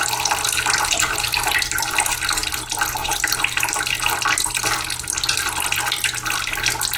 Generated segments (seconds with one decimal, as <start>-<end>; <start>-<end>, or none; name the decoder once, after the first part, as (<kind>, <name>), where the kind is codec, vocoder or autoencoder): 3.0-3.9 (vocoder, BigVGAN v2)